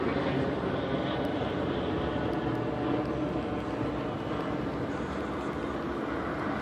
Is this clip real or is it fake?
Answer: real